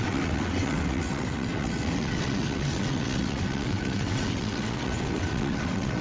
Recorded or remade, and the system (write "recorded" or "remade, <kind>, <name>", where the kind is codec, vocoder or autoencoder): remade, vocoder, WaveNeXt